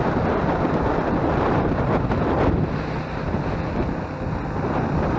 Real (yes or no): yes